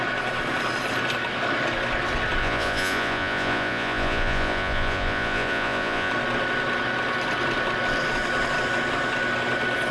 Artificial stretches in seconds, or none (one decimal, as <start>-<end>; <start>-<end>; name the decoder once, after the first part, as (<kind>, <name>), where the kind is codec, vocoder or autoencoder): 2.4-6.1 (vocoder, Vocos)